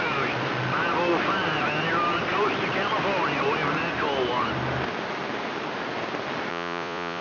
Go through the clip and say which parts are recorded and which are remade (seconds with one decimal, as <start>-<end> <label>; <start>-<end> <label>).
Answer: 0.0-6.5 recorded; 6.5-7.2 remade